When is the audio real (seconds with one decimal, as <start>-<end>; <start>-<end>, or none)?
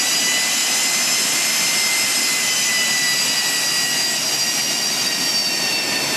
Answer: 0.0-6.2